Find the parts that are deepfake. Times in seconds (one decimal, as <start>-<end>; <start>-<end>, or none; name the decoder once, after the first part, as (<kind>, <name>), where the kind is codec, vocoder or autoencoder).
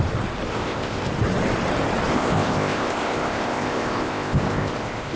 0.5-1.1 (codec, ZipCodec); 2.1-5.2